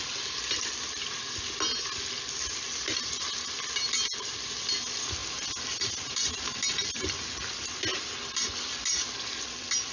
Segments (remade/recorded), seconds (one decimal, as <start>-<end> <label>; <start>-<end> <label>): 0.0-9.9 recorded